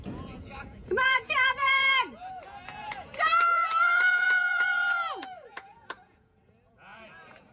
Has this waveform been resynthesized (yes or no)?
yes